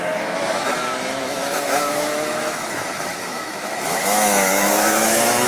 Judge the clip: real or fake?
fake